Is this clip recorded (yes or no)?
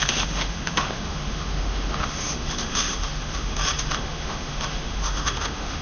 no